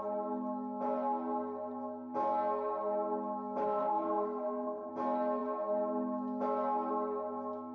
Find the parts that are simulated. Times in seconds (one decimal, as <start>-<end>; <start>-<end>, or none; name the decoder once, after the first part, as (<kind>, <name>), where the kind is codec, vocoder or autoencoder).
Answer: 3.6-4.9 (codec, SNAC)